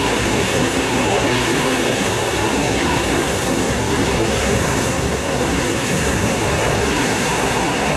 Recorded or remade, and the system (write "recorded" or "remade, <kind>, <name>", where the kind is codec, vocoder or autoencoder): remade, codec, SNAC